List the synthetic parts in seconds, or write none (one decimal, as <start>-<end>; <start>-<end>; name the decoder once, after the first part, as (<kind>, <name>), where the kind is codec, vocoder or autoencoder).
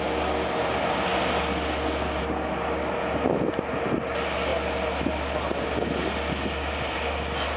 none